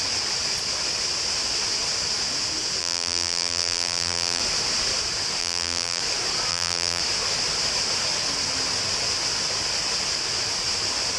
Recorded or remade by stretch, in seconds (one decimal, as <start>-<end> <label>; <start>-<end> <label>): 0.0-2.8 recorded; 2.8-4.4 remade; 4.4-5.4 recorded; 5.4-6.0 remade; 6.0-6.5 recorded; 6.5-7.0 remade; 7.0-11.2 recorded